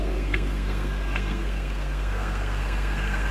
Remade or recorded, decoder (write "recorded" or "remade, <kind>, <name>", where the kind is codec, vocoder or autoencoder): remade, codec, SNAC